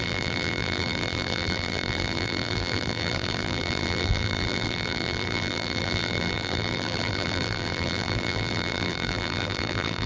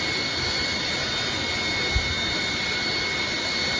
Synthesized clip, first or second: first